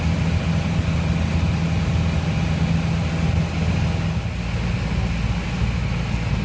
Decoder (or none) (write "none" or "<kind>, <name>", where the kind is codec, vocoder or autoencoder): none